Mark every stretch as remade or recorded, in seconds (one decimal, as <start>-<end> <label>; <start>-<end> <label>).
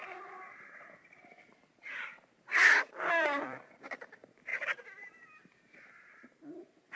0.0-4.5 remade; 4.5-5.6 recorded; 5.6-7.0 remade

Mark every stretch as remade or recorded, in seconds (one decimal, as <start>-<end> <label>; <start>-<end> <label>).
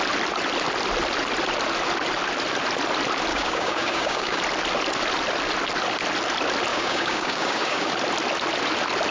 0.0-3.3 recorded; 3.3-4.4 remade; 4.4-6.7 recorded; 6.7-7.9 remade; 7.9-9.1 recorded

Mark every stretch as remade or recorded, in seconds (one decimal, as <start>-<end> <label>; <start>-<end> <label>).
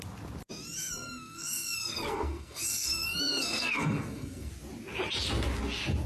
0.0-0.8 recorded; 0.8-4.5 remade; 4.5-6.1 recorded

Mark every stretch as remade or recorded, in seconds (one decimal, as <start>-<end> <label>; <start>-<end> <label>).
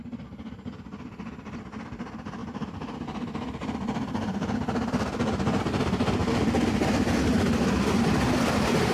0.0-2.4 recorded; 2.4-4.9 remade; 4.9-8.9 recorded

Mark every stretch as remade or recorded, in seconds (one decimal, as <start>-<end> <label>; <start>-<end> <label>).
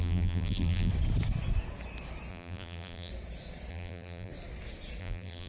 0.0-0.9 remade; 0.9-2.3 recorded; 2.3-3.1 remade; 3.1-3.7 recorded; 3.7-4.3 remade; 4.3-5.0 recorded; 5.0-5.5 remade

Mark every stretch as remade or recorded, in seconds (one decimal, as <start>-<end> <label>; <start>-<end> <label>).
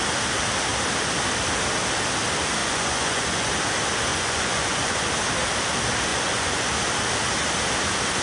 0.0-2.6 recorded; 2.6-3.5 remade; 3.5-4.1 recorded; 4.1-5.1 remade; 5.1-6.1 recorded; 6.1-6.7 remade; 6.7-8.2 recorded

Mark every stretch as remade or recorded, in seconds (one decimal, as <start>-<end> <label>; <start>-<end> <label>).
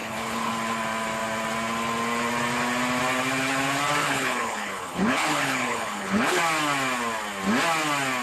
0.0-0.5 remade; 0.5-4.0 recorded; 4.0-6.4 remade; 6.4-8.2 recorded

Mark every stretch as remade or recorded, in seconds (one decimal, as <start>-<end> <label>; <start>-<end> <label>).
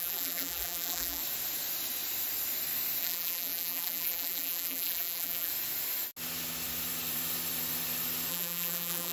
0.0-1.2 remade; 1.2-3.0 recorded; 3.0-5.5 remade; 5.5-8.3 recorded; 8.3-9.1 remade